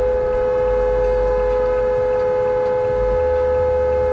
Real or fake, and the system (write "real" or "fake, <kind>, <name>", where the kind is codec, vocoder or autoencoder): real